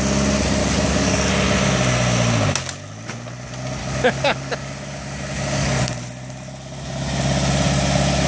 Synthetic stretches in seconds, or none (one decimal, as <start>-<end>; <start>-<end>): 0.6-1.3; 3.8-5.8